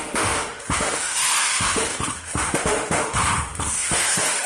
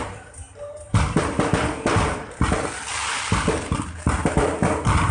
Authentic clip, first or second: second